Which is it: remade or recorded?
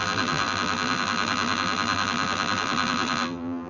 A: remade